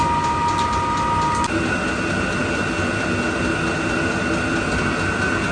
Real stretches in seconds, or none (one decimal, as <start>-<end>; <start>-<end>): 0.0-5.5